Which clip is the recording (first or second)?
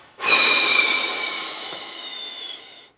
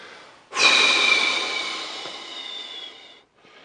second